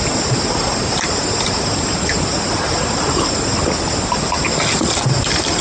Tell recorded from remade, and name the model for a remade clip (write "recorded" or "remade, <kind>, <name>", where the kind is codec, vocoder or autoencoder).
recorded